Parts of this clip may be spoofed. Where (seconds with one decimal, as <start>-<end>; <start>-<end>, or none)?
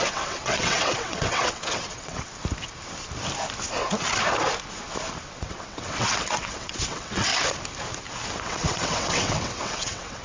0.0-2.3; 5.4-7.3; 8.4-10.2